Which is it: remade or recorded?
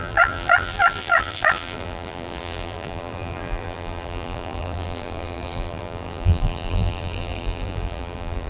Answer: remade